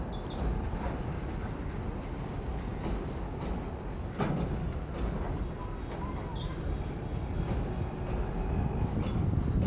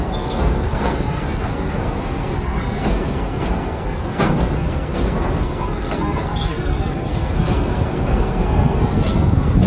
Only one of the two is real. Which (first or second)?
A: first